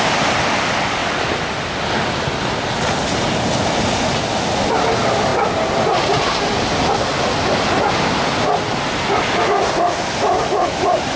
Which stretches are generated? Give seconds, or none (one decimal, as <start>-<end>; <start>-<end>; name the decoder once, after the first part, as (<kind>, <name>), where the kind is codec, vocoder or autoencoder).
none